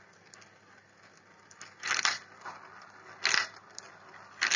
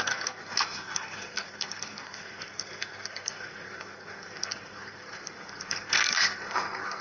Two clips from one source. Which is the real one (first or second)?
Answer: first